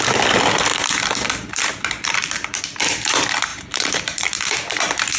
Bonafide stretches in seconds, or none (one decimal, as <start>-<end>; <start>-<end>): 0.0-0.7; 2.6-3.5